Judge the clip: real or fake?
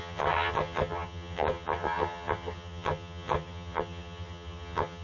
fake